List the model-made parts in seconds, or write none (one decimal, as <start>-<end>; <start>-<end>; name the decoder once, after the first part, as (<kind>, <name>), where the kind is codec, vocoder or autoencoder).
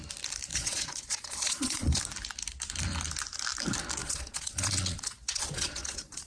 0.5-2.0 (vocoder, Vocos); 4.0-6.3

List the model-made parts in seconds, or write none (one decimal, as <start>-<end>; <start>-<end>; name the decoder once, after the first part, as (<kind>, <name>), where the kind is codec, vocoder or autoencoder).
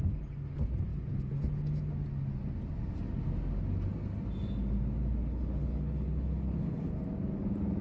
5.2-6.9 (codec, HILCodec)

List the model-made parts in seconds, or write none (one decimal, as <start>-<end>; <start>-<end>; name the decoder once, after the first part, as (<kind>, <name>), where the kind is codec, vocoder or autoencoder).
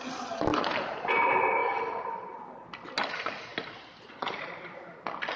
0.5-1.1 (vocoder, BigVGAN v2); 1.6-2.4; 3.5-4.4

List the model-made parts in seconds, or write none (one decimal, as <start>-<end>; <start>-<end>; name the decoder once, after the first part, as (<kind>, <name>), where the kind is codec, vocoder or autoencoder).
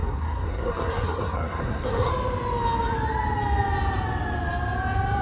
0.0-2.1 (codec, SNAC)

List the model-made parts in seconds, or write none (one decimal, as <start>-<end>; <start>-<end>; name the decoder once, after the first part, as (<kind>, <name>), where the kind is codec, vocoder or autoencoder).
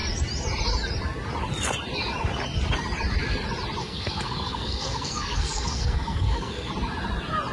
3.8-6.7 (codec, SNAC)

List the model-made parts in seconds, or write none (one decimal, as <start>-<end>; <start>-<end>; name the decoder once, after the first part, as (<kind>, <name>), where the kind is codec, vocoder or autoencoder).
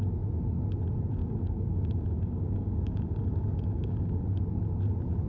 1.2-4.4 (codec, DAC)